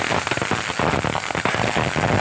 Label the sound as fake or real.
real